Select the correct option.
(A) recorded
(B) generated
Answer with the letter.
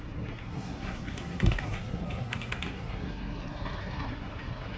B